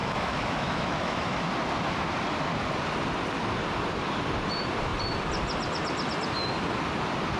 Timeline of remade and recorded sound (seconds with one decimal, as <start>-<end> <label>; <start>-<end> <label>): 0.0-1.4 remade; 1.4-7.4 recorded